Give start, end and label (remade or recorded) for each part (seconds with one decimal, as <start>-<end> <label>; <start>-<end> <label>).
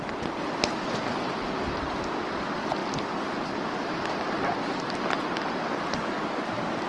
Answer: 0.0-6.9 recorded